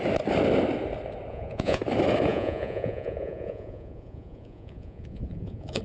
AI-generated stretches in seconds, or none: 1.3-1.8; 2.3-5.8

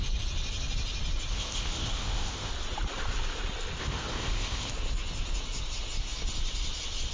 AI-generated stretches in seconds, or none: 1.3-2.5; 3.8-4.7